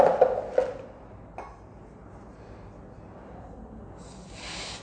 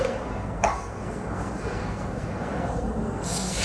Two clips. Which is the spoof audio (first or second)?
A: second